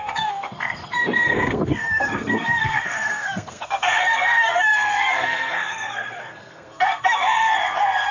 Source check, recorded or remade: remade